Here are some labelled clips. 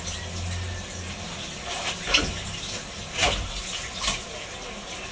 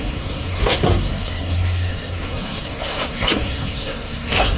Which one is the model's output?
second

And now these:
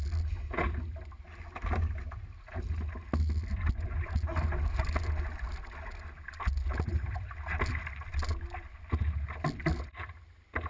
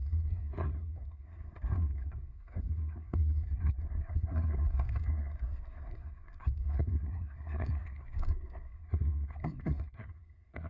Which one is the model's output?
second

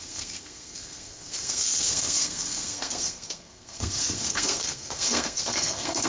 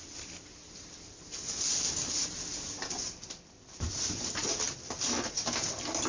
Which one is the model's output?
first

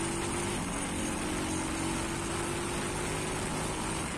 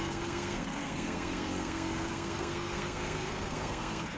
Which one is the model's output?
second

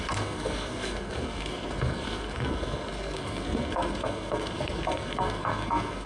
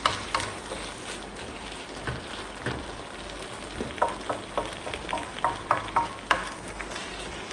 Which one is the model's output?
first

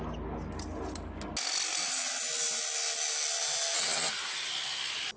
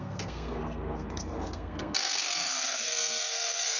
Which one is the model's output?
second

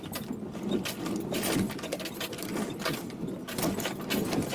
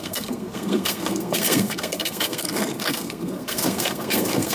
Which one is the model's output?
second